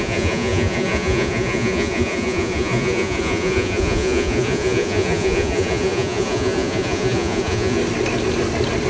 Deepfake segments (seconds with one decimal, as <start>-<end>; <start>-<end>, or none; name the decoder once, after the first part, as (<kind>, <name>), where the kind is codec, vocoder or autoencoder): 0.0-7.8 (vocoder, Vocos)